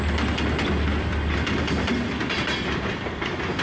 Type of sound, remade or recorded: recorded